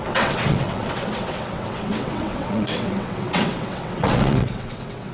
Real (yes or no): no